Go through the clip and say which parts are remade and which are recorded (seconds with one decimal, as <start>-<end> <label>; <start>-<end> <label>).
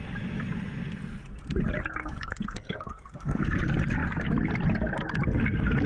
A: 0.0-2.0 recorded; 2.0-3.5 remade; 3.5-5.9 recorded